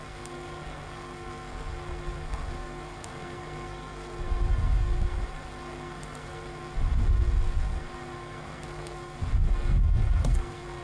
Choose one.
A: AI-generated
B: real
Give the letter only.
A